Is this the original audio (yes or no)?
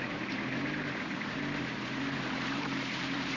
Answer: no